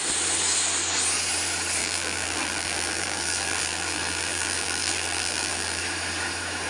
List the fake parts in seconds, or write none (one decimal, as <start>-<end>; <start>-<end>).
1.8-5.8